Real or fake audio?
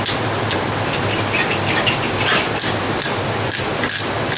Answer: real